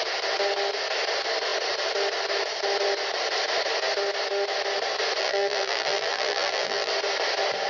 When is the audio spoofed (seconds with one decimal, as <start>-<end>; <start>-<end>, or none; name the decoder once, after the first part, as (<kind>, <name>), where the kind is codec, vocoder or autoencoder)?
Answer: 5.2-6.9 (vocoder, BigVGAN v2)